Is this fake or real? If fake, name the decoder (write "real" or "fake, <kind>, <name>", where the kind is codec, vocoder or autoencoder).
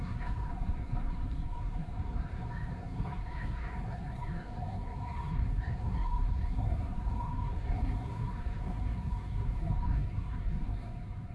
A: fake, codec, SNAC